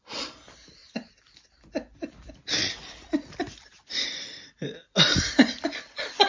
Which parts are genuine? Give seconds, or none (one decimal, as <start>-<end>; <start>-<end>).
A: 0.8-4.1